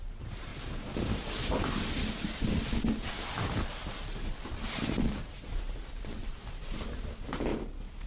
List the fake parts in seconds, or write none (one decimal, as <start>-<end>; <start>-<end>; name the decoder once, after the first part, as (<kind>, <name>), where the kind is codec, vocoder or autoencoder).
0.0-0.5 (vocoder, BigVGAN v2); 5.0-6.4